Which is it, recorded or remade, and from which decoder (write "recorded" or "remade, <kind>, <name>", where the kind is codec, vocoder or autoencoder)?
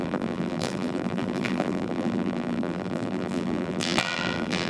remade, vocoder, BigVGAN v2